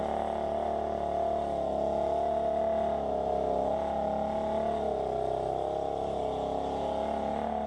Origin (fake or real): real